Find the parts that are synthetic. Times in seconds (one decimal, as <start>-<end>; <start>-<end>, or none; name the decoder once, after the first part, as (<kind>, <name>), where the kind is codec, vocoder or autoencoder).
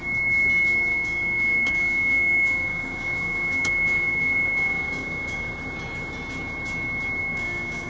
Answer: 0.9-5.5 (codec, DAC); 7.2-7.9